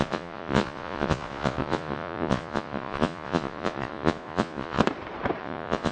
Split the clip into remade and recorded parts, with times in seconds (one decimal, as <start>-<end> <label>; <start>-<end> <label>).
0.0-4.8 remade; 4.8-5.4 recorded; 5.4-5.9 remade